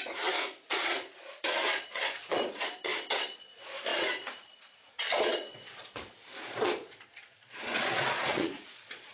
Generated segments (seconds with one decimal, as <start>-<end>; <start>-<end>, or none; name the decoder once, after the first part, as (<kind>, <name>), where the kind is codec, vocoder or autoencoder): 0.0-9.1 (vocoder, Vocos)